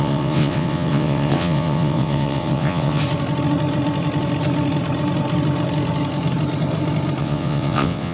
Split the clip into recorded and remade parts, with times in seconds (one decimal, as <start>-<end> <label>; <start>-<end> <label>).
0.0-3.0 remade; 3.0-7.2 recorded; 7.2-8.1 remade